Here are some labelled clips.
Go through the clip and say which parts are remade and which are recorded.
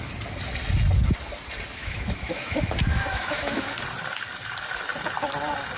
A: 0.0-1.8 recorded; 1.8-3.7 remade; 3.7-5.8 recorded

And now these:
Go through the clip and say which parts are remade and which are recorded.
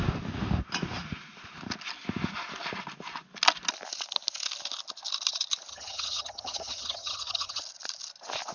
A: 0.0-5.7 recorded; 5.7-7.6 remade; 7.6-8.5 recorded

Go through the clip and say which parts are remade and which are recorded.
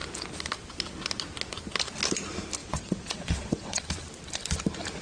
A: 0.0-2.6 recorded; 2.6-3.8 remade; 3.8-5.0 recorded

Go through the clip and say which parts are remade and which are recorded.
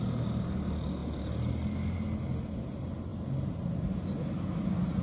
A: 0.0-5.0 recorded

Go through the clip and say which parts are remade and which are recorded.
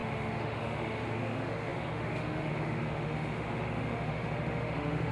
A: 0.0-5.1 remade